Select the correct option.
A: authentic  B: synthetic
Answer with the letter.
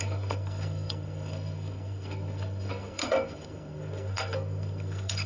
B